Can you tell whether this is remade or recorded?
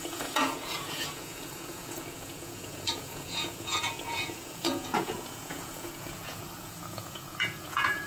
remade